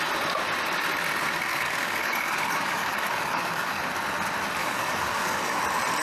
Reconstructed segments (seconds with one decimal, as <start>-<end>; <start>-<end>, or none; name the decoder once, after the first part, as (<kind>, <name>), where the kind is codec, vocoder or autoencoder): 1.5-3.8 (codec, DAC); 4.6-5.6